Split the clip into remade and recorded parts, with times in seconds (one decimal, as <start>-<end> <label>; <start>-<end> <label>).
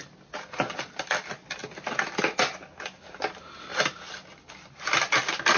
0.0-5.6 recorded